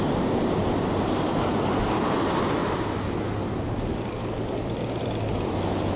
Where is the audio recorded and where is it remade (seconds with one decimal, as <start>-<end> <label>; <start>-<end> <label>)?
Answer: 0.0-2.6 recorded; 2.6-5.5 remade; 5.5-6.0 recorded